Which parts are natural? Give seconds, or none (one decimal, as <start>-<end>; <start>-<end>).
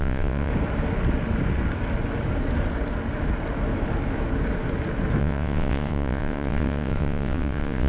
0.5-5.2